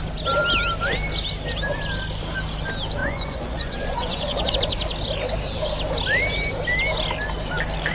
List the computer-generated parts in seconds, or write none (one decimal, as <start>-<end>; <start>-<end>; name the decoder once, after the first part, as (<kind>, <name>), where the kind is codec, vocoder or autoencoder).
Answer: 3.0-4.5 (vocoder, Vocos)